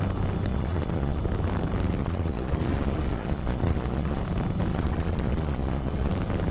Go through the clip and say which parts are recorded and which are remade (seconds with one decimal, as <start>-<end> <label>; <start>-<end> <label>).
0.0-0.5 recorded; 0.5-1.2 remade; 1.2-2.0 recorded; 2.0-4.2 remade; 4.2-4.7 recorded; 4.7-6.1 remade; 6.1-6.5 recorded